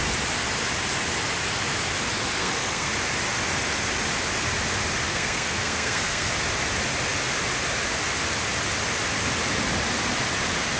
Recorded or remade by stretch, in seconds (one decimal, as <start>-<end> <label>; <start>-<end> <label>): 0.0-2.4 recorded; 2.4-2.9 remade; 2.9-5.1 recorded; 5.1-6.3 remade; 6.3-10.8 recorded